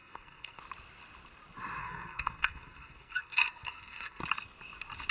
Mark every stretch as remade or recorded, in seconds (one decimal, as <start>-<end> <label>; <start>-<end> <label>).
0.0-0.6 remade; 0.6-1.8 recorded; 1.8-4.2 remade; 4.2-5.1 recorded